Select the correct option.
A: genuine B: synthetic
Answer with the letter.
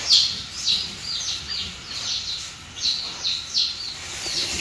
A